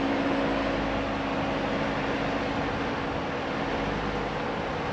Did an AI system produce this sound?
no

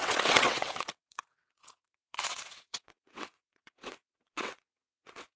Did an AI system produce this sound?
yes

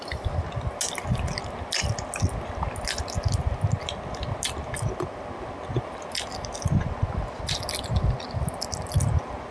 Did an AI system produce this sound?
no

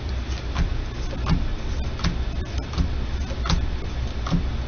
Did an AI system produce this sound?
no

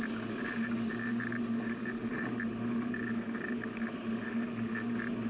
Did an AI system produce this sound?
no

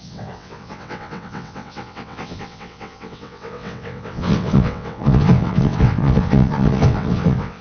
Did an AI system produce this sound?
yes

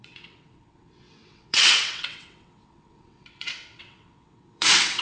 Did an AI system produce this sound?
yes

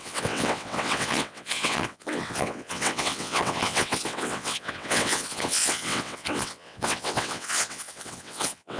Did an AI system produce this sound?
yes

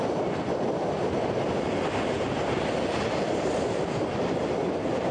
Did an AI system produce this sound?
no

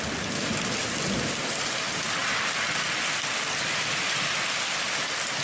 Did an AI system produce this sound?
no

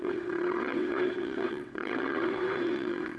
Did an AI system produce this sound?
yes